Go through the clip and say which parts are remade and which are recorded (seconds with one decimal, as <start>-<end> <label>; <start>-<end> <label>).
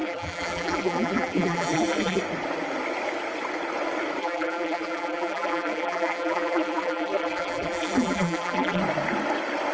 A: 0.0-2.2 remade; 2.2-4.2 recorded; 4.2-8.8 remade; 8.8-9.7 recorded